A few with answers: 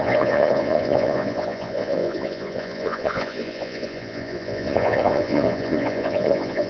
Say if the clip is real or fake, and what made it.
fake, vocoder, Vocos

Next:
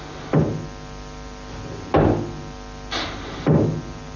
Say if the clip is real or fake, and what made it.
real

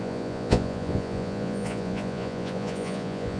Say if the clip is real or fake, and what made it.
fake, vocoder, Vocos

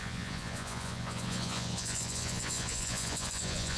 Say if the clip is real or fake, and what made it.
fake, vocoder, Vocos